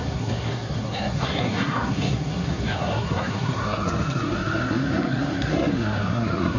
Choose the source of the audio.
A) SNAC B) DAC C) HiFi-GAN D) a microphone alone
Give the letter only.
A